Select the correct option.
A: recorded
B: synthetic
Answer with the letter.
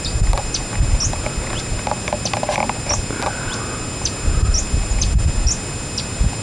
A